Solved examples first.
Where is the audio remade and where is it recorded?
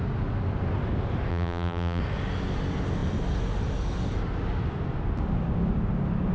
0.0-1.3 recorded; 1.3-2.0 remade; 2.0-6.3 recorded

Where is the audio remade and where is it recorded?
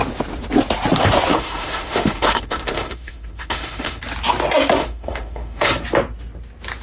0.0-1.3 recorded; 1.3-4.0 remade; 4.0-4.8 recorded; 4.8-5.7 remade; 5.7-6.8 recorded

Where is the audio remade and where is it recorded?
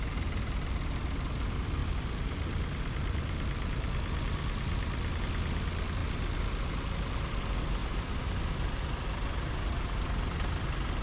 0.0-1.8 recorded; 1.8-5.2 remade; 5.2-7.8 recorded; 7.8-9.7 remade; 9.7-11.0 recorded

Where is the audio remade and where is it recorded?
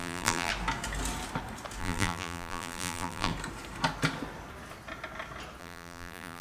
0.0-0.5 remade; 0.5-1.8 recorded; 1.8-3.3 remade; 3.3-5.6 recorded; 5.6-6.4 remade